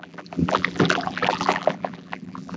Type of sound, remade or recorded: remade